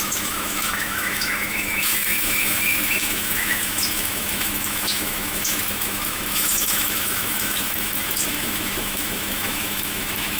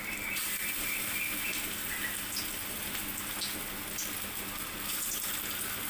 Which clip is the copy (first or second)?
first